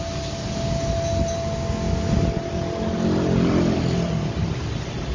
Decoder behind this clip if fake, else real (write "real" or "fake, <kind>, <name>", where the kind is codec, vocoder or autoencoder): real